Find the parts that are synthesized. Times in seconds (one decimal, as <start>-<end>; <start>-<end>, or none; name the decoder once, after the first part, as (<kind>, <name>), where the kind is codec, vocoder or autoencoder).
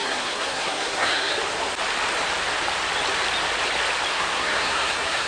0.0-1.3 (codec, SNAC); 4.1-5.3